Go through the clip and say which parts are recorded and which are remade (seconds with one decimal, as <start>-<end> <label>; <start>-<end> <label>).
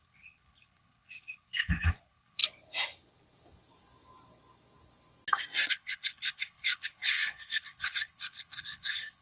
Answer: 0.0-2.4 remade; 2.4-5.7 recorded; 5.7-9.2 remade